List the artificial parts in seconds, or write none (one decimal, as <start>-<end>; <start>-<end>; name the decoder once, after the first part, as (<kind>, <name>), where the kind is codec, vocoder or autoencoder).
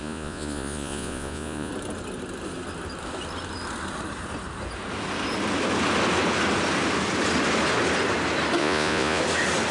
0.0-1.7 (vocoder, Vocos); 8.6-9.2